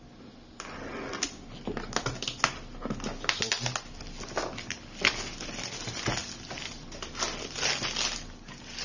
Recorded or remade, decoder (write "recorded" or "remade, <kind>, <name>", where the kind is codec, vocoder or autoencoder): recorded